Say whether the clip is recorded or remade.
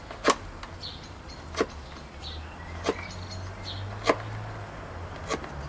recorded